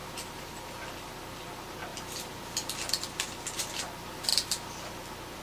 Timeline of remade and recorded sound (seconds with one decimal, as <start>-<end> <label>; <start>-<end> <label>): 0.0-5.4 recorded

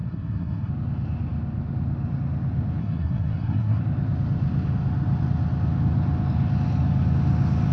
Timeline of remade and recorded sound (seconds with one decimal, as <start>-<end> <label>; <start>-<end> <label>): 0.0-0.7 remade; 0.7-2.8 recorded; 2.8-3.8 remade; 3.8-7.7 recorded